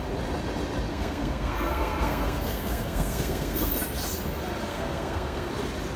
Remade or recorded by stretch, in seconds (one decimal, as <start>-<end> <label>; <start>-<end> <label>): 0.0-0.9 recorded; 0.9-3.7 remade; 3.7-4.7 recorded; 4.7-5.5 remade; 5.5-6.0 recorded